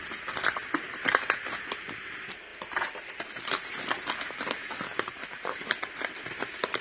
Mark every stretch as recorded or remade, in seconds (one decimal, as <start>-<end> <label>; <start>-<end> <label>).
0.0-4.9 recorded; 4.9-6.8 remade